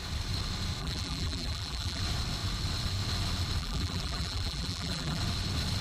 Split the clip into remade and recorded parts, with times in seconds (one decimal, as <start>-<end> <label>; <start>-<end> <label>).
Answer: 0.0-0.8 recorded; 0.8-2.0 remade; 2.0-3.6 recorded; 3.6-5.2 remade; 5.2-5.8 recorded